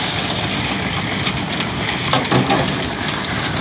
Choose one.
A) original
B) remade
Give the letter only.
A